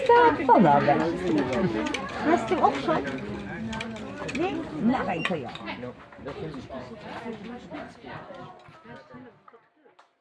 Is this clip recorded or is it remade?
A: recorded